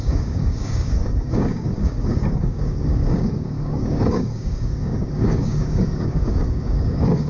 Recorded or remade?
remade